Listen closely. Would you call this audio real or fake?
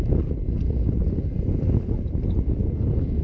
real